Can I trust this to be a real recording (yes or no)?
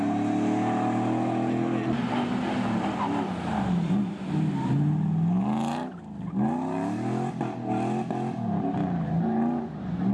yes